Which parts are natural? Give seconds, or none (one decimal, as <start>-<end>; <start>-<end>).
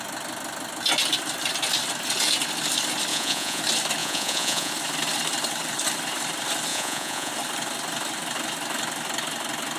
0.0-3.1; 3.6-4.0; 4.7-6.7; 7.3-9.8